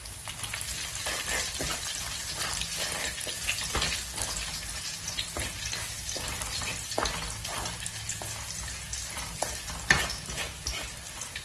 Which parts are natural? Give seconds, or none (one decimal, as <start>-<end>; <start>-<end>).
0.0-11.4